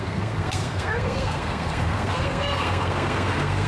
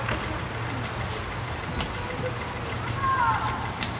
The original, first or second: second